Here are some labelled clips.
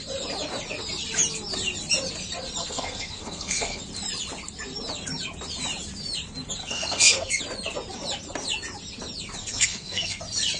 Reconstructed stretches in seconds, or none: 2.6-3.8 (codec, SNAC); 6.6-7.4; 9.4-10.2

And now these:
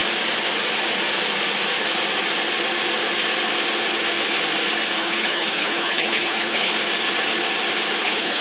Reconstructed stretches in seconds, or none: 5.0-6.7 (codec, HILCodec); 8.0-8.4

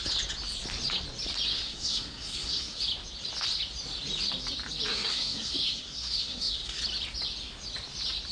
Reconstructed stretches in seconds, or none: 1.5-2.8 (codec, SNAC); 4.9-6.8

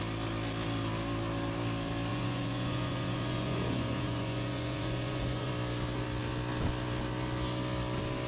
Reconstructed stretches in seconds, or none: 2.1-5.5 (vocoder, Vocos)

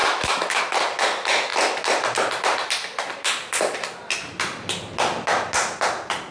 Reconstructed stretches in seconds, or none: 0.0-0.6 (autoencoder, DAC-VAE)

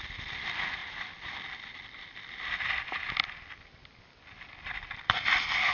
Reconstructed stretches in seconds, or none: 0.0-0.8 (vocoder, BigVGAN v2); 4.2-5.7